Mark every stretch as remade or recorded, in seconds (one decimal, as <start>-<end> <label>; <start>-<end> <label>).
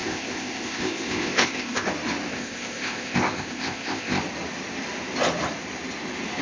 0.0-1.9 remade; 1.9-2.3 recorded; 2.3-4.2 remade; 4.2-6.4 recorded